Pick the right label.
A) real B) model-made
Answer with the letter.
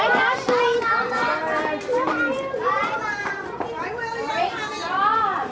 B